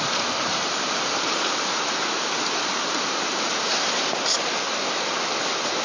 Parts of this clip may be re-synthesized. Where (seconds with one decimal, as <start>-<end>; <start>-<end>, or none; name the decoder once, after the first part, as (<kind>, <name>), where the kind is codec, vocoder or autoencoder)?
0.5-4.0 (vocoder, BigVGAN v2)